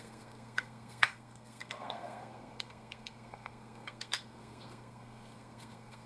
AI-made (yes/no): yes